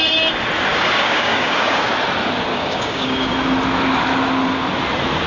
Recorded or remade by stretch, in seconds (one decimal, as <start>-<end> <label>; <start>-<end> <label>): 0.0-0.7 recorded; 0.7-1.9 remade; 1.9-2.5 recorded; 2.5-3.3 remade; 3.3-5.3 recorded